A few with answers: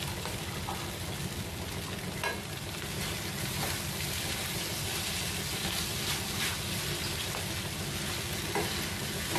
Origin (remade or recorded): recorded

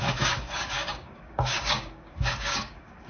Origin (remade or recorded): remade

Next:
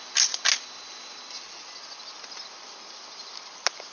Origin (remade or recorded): recorded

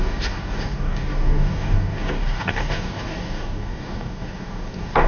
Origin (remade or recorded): remade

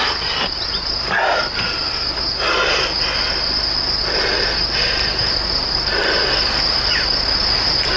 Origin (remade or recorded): recorded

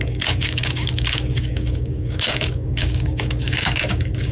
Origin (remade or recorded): remade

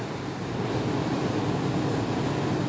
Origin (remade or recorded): recorded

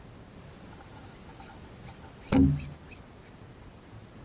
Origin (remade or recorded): recorded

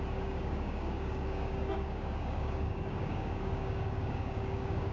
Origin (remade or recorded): remade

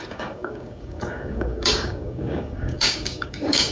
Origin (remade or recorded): remade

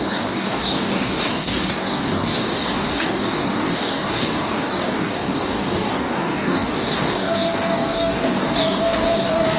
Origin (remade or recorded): remade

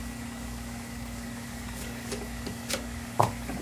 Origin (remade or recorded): remade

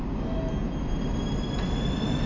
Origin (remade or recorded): recorded